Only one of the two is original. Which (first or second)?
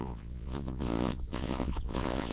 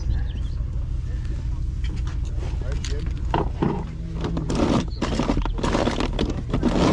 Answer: second